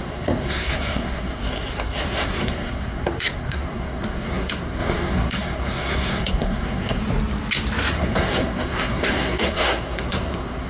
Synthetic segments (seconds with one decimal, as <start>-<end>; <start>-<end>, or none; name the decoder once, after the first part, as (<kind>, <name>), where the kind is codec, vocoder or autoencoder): 0.0-7.0 (codec, SNAC); 7.9-10.7